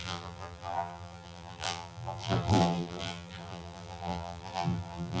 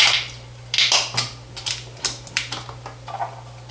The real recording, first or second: second